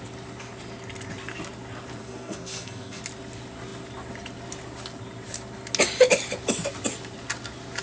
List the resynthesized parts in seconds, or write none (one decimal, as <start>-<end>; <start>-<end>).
2.0-3.0